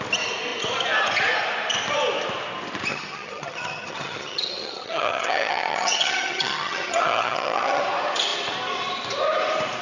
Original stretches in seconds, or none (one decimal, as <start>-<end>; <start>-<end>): 0.0-2.9; 7.8-9.8